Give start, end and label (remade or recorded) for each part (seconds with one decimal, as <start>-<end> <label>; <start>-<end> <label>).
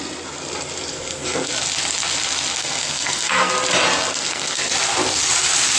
0.0-0.9 recorded; 0.9-1.5 remade; 1.5-2.6 recorded; 2.6-3.5 remade; 3.5-4.1 recorded; 4.1-4.7 remade; 4.7-5.8 recorded